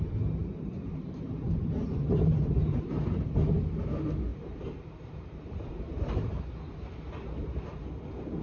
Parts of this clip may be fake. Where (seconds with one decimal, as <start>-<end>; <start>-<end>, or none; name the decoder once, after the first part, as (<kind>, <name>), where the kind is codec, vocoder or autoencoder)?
0.4-3.0 (vocoder, BigVGAN v2); 4.3-6.3